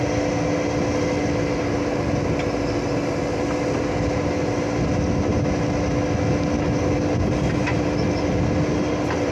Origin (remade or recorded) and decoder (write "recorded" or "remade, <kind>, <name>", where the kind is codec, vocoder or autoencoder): recorded